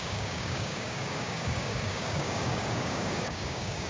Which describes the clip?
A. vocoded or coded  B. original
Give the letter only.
A